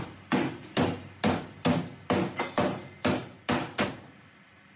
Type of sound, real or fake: real